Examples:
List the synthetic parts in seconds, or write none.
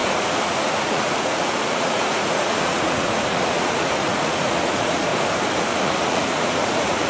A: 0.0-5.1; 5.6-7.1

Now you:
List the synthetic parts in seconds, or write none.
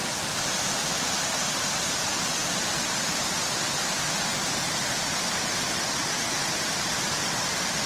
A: 1.9-7.9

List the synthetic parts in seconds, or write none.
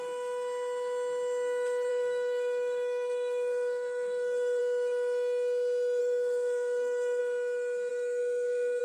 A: 1.9-4.6; 6.0-7.2; 7.9-8.8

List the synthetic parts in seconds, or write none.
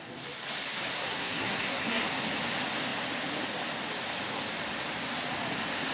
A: 0.9-2.0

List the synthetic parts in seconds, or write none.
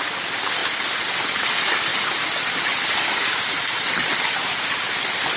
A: none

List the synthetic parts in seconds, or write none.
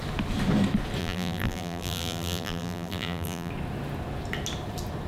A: 1.0-3.5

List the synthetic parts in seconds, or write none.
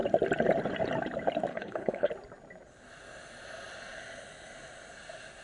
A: 1.5-2.1